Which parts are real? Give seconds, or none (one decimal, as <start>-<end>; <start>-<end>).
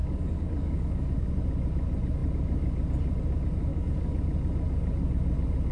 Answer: 1.3-3.7; 4.2-5.7